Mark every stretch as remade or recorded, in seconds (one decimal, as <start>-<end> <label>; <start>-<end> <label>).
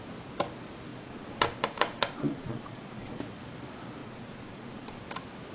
0.0-0.9 recorded; 0.9-3.2 remade; 3.2-4.0 recorded; 4.0-5.0 remade; 5.0-5.5 recorded